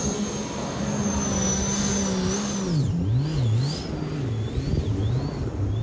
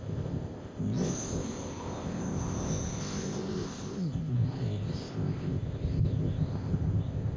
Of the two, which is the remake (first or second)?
second